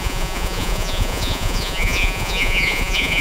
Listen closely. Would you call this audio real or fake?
fake